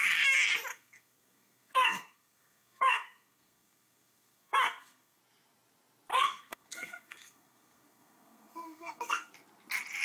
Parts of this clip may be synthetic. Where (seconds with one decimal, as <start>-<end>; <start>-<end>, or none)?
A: 0.7-5.2; 6.1-9.3